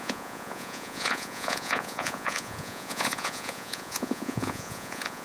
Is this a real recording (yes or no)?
no